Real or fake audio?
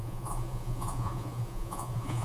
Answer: fake